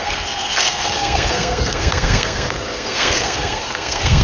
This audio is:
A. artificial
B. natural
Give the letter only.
A